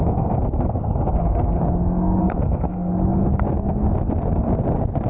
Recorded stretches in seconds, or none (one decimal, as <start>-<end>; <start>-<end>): 1.6-2.2; 2.9-5.1